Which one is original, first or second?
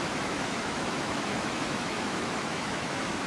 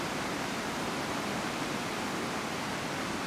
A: second